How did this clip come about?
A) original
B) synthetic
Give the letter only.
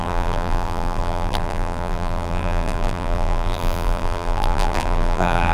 B